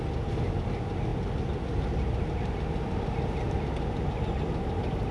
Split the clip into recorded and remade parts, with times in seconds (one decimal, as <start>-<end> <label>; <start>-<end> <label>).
0.0-5.1 recorded